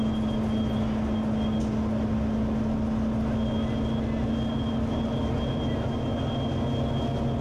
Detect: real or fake real